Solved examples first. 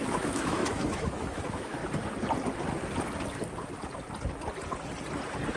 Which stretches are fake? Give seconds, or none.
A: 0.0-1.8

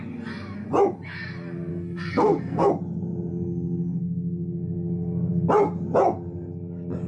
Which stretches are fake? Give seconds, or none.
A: 1.7-2.7; 3.3-5.3

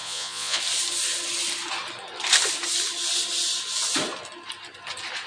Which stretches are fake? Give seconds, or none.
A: 0.0-0.6

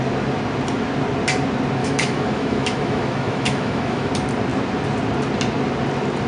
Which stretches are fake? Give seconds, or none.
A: 1.8-4.1